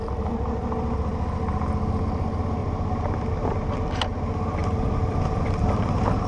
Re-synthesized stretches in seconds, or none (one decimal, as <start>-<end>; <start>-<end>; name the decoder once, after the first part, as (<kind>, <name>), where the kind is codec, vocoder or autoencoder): 2.6-3.3 (vocoder, BigVGAN v2); 4.6-5.5